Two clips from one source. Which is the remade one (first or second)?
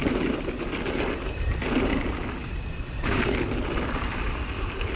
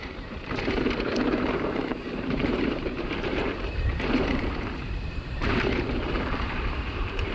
second